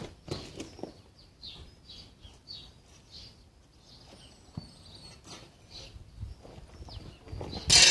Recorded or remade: recorded